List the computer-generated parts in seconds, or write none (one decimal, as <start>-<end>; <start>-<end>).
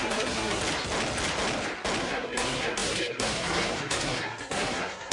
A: 0.0-0.6; 2.0-5.1